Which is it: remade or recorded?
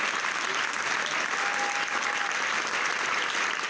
recorded